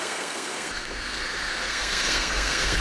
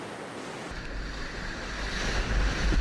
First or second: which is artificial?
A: first